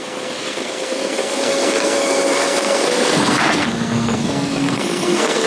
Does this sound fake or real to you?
fake